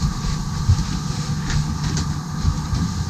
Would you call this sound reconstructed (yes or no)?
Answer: no